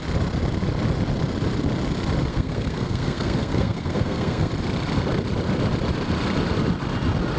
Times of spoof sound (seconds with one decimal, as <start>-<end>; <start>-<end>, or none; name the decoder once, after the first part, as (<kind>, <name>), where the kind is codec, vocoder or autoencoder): 2.3-4.5 (codec, SNAC)